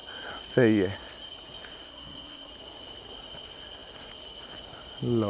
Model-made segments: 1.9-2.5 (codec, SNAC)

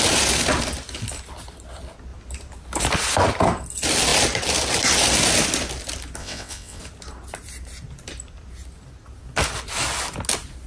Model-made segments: 6.2-6.8 (vocoder, WaveNeXt)

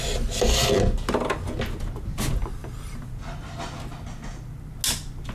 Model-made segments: none

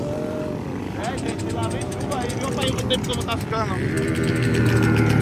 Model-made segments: none

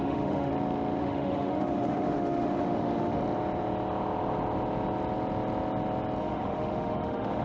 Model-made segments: 0.0-0.5 (autoencoder, DAC-VAE); 1.0-3.2; 6.2-7.4